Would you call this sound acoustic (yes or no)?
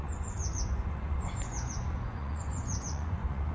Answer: no